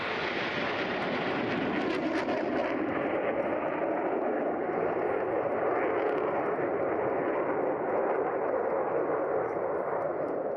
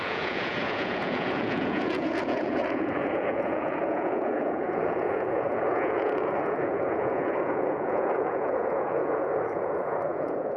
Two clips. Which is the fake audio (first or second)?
second